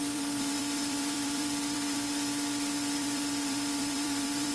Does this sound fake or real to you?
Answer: fake